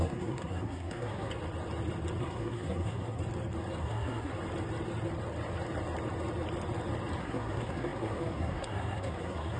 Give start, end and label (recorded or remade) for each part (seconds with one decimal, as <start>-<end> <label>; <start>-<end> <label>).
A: 0.0-1.3 remade; 1.3-2.2 recorded; 2.2-3.2 remade; 3.2-3.8 recorded; 3.8-4.3 remade; 4.3-7.2 recorded; 7.2-9.6 remade